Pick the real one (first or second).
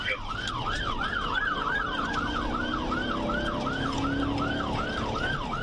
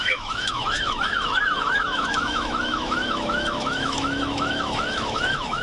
first